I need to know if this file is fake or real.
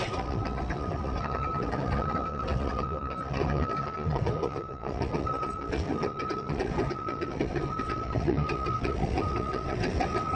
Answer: fake